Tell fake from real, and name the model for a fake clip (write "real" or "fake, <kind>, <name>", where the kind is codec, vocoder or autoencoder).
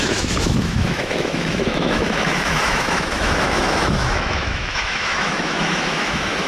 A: fake, autoencoder, DAC-VAE